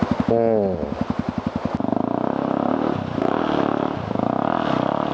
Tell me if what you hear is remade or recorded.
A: recorded